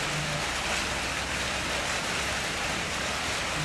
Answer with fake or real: real